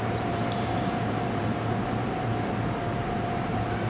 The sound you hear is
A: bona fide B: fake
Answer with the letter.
B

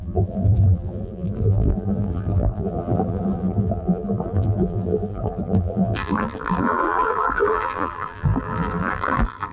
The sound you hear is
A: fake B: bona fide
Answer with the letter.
A